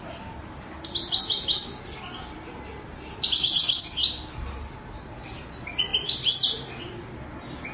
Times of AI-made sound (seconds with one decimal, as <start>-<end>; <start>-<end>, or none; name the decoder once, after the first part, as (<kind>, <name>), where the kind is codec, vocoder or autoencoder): none